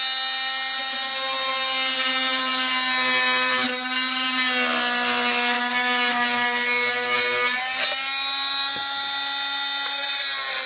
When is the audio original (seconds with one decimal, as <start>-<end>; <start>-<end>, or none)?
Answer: 0.0-10.7